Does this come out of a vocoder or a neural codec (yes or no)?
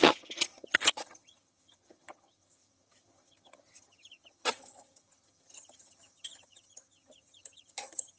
yes